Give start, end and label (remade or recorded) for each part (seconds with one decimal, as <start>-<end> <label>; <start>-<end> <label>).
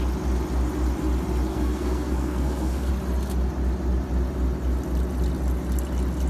0.0-1.5 recorded; 1.5-2.9 remade; 2.9-6.3 recorded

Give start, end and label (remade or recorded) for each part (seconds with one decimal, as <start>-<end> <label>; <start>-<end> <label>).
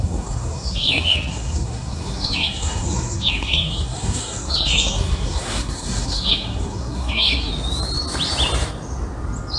0.0-7.5 remade; 7.5-9.6 recorded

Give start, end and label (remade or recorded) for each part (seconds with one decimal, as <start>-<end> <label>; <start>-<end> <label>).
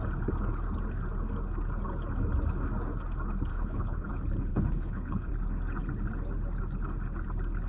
0.0-3.5 recorded; 3.5-4.1 remade; 4.1-4.5 recorded; 4.5-5.3 remade; 5.3-7.7 recorded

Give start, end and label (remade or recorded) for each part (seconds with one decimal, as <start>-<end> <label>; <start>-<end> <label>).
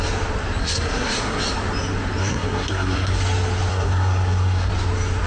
0.0-0.6 recorded; 0.6-1.4 remade; 1.4-2.2 recorded; 2.2-3.2 remade; 3.2-3.7 recorded; 3.7-4.7 remade; 4.7-5.3 recorded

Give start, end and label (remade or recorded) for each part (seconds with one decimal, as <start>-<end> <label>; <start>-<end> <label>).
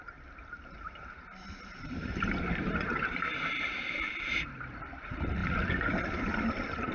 0.0-5.4 remade; 5.4-6.9 recorded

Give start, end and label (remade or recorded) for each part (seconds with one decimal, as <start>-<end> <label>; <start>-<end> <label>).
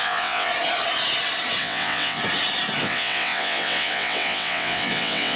0.0-0.5 remade; 0.5-1.6 recorded; 1.6-2.2 remade; 2.2-2.8 recorded; 2.8-5.4 remade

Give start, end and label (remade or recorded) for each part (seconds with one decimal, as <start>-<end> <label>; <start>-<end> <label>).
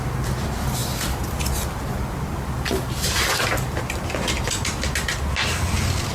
0.0-6.1 recorded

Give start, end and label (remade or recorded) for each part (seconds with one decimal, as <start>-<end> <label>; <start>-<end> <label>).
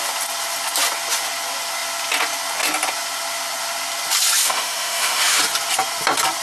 0.0-4.4 recorded; 4.4-5.4 remade; 5.4-6.4 recorded